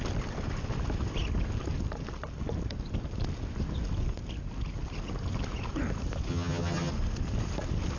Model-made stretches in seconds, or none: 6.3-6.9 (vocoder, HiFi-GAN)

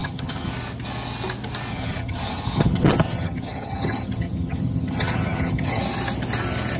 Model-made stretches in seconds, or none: 0.0-0.5 (vocoder, HiFi-GAN); 1.7-5.8

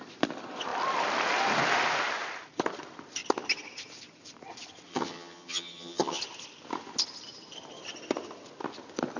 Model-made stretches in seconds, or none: 4.9-6.2 (vocoder, HiFi-GAN)

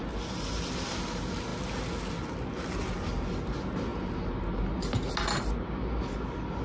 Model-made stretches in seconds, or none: none

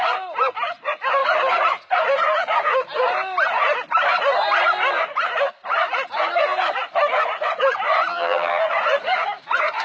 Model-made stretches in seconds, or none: 8.1-8.6 (vocoder, HiFi-GAN)

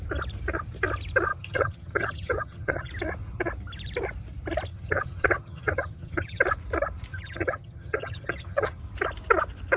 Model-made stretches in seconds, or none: 1.3-2.9 (vocoder, HiFi-GAN); 4.7-6.4; 7.1-8.8